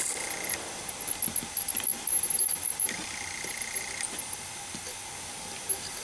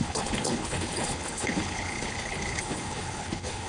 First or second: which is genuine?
first